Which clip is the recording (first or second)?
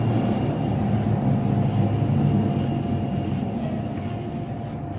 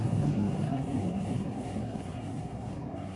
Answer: first